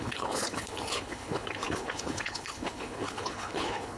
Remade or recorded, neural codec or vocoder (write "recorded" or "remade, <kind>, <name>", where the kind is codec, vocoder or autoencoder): remade, codec, HILCodec